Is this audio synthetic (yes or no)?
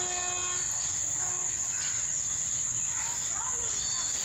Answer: no